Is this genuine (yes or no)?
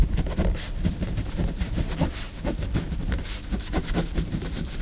no